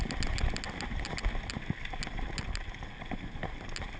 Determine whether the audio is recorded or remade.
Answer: recorded